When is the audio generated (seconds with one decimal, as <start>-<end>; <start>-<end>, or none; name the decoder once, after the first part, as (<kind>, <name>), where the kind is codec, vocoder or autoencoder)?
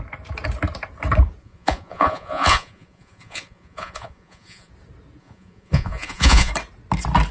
1.4-4.7 (vocoder, Vocos); 5.2-6.5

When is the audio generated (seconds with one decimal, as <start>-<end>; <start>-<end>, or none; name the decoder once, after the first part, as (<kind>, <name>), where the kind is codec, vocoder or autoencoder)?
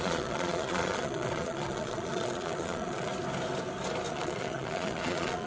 0.0-3.1 (vocoder, Vocos); 4.1-5.5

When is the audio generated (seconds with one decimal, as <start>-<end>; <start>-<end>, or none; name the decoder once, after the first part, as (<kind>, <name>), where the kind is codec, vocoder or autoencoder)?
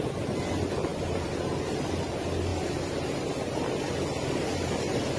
none